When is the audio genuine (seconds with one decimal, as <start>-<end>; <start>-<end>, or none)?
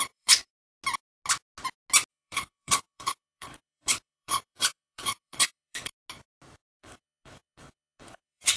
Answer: 0.5-2.1; 5.9-6.8